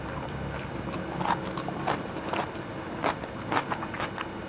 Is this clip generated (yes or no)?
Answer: no